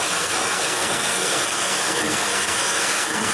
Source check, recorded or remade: remade